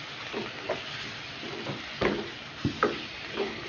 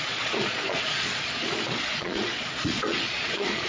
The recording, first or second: first